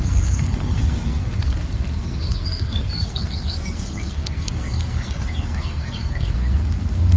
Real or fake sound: fake